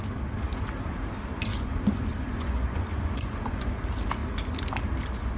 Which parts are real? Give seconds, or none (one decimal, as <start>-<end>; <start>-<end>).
0.0-1.5; 3.7-5.4